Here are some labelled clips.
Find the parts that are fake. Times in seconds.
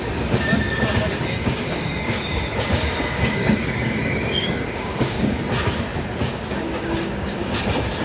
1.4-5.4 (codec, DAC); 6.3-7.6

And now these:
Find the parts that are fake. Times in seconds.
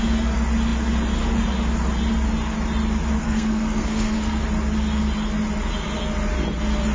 3.2-4.4 (codec, SNAC)